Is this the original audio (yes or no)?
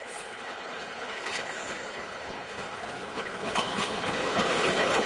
no